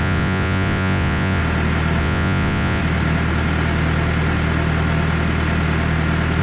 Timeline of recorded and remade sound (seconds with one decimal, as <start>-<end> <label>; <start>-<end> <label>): 0.0-1.4 remade; 1.4-2.0 recorded; 2.0-2.8 remade; 2.8-6.4 recorded